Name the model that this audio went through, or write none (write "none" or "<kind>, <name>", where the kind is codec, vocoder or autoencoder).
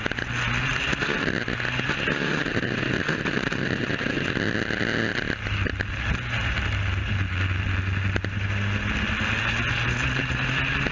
none